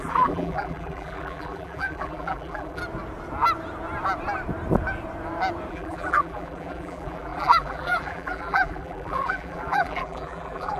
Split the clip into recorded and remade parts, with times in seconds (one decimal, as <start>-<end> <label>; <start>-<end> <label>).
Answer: 0.0-2.8 remade; 2.8-5.7 recorded; 5.7-10.8 remade